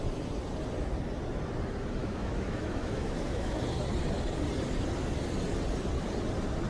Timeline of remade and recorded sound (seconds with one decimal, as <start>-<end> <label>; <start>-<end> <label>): 0.0-2.0 recorded; 2.0-3.6 remade; 3.6-6.7 recorded